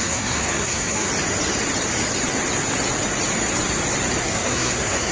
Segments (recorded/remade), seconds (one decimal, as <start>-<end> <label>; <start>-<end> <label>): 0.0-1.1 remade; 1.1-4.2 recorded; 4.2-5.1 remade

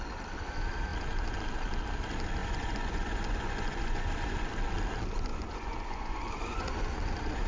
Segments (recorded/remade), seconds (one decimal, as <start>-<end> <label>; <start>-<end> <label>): 0.0-2.4 recorded; 2.4-4.5 remade; 4.5-5.3 recorded; 5.3-6.8 remade; 6.8-7.5 recorded

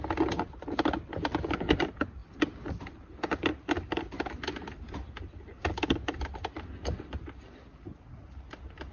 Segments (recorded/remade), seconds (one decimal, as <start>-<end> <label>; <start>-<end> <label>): 0.0-8.9 recorded

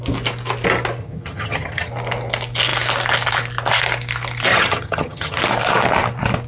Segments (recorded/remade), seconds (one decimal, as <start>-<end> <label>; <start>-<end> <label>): 0.0-1.0 recorded; 1.0-1.9 remade; 1.9-4.5 recorded; 4.5-5.4 remade; 5.4-6.5 recorded

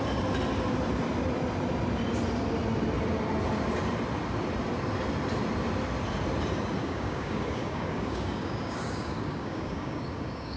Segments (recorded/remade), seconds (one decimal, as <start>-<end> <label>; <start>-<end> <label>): 0.0-6.8 recorded; 6.8-10.6 remade